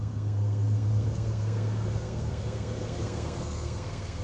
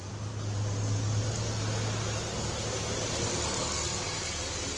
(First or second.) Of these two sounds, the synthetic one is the first